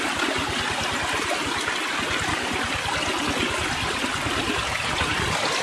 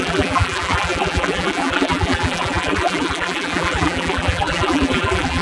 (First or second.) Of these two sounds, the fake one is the second